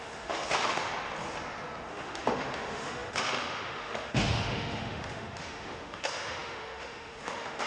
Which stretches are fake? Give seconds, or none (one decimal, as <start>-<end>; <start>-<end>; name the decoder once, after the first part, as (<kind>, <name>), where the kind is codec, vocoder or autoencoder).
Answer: 0.0-0.9 (autoencoder, DAC-VAE); 1.9-7.7

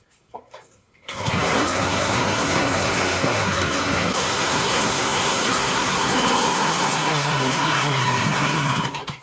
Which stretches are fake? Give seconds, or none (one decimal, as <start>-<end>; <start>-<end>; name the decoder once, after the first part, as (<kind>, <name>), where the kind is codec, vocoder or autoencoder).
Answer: 0.0-9.2 (codec, SNAC)